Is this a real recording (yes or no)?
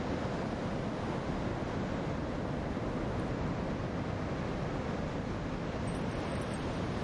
yes